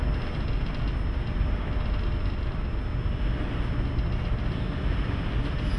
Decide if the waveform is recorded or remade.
recorded